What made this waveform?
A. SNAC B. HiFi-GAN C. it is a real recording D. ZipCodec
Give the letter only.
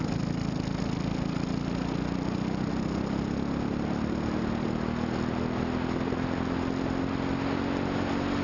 C